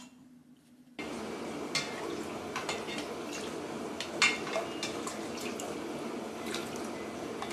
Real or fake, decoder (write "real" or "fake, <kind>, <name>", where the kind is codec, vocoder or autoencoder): real